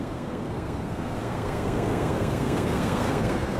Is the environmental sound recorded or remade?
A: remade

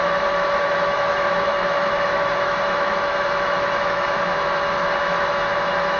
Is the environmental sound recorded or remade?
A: remade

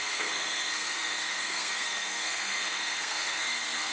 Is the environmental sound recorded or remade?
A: remade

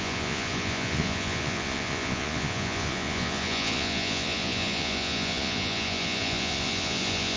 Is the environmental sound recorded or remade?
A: remade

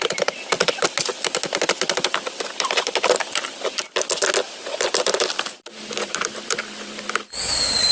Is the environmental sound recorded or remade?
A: recorded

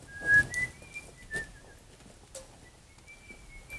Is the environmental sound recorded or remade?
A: recorded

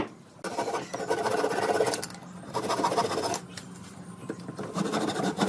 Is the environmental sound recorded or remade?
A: recorded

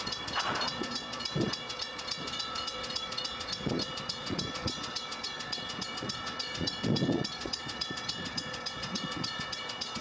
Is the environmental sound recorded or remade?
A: remade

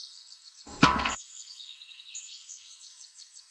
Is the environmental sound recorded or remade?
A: remade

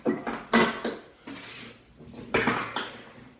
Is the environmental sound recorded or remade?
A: recorded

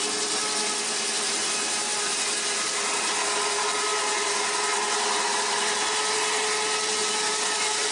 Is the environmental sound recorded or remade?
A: recorded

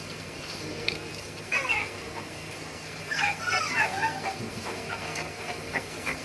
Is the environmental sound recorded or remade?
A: remade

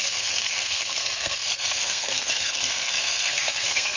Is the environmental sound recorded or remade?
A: remade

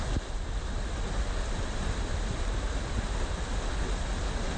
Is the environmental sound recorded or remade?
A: recorded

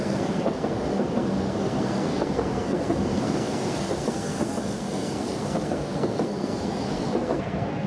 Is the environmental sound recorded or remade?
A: remade